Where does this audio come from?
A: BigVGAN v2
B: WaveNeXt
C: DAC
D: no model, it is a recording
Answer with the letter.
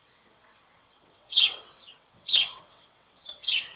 B